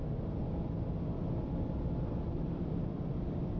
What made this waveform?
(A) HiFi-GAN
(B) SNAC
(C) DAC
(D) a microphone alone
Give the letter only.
D